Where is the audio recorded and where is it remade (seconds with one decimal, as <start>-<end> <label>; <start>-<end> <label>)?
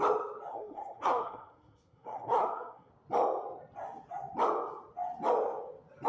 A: 0.0-0.5 recorded; 0.5-2.9 remade; 2.9-6.1 recorded